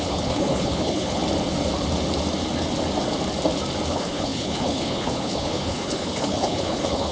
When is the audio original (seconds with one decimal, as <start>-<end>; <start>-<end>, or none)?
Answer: 1.2-3.9